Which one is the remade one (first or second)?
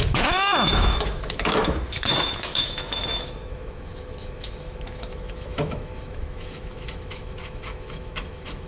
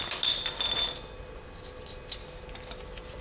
first